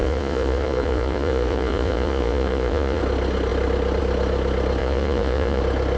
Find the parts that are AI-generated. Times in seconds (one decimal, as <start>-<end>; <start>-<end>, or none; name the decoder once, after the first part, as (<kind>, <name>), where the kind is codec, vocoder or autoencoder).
0.0-3.0 (vocoder, Vocos); 4.8-5.6